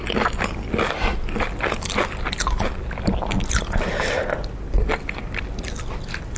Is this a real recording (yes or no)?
yes